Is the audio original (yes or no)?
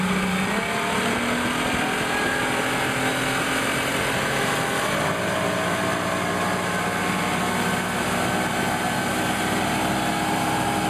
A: yes